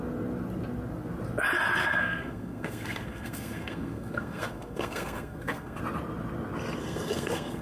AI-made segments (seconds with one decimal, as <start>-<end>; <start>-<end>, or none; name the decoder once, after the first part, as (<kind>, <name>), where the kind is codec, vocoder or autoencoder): 1.8-5.8 (codec, SNAC); 6.8-7.6